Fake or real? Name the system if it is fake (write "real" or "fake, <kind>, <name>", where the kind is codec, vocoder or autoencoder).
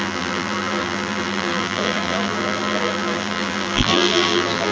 fake, vocoder, BigVGAN v2